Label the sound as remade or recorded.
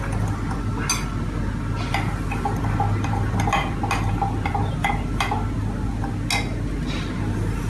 recorded